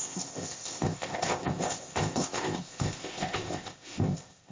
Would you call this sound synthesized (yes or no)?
yes